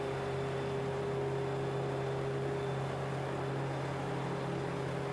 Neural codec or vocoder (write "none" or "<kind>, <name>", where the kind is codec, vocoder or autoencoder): none